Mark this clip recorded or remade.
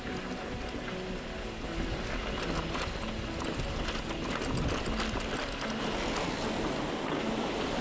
recorded